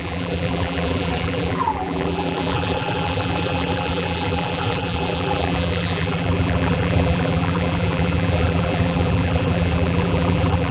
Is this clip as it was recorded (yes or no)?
no